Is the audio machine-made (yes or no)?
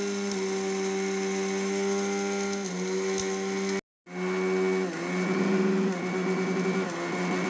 no